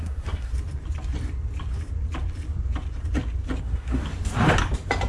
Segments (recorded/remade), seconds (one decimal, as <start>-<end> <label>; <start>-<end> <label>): 0.0-0.5 remade; 0.5-3.6 recorded; 3.6-4.0 remade; 4.0-5.1 recorded

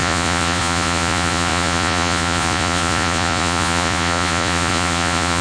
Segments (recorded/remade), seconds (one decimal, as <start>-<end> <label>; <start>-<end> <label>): 0.0-5.4 remade

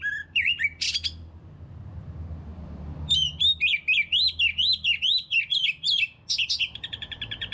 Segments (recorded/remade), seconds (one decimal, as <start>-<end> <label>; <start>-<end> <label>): 0.0-7.5 recorded